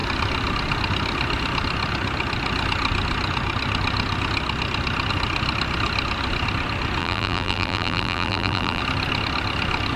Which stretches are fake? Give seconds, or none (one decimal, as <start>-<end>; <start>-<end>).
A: 7.0-8.8